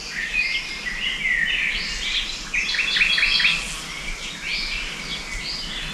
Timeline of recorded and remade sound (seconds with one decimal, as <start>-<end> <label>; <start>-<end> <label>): 0.0-5.9 recorded